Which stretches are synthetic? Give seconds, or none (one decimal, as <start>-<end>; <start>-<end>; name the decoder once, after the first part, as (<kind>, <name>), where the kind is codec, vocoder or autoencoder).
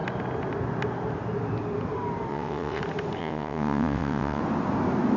2.3-2.8 (vocoder, WaveNeXt); 3.2-4.4